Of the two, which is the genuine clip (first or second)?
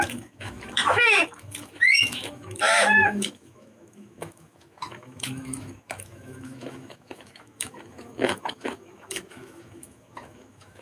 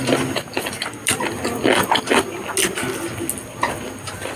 second